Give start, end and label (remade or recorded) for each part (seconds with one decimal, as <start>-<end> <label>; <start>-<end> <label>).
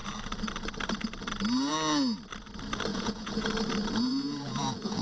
0.0-2.9 recorded; 2.9-3.5 remade; 3.5-4.1 recorded; 4.1-5.0 remade